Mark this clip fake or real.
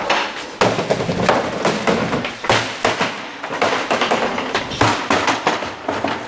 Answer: real